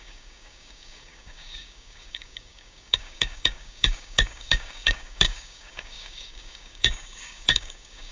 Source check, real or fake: fake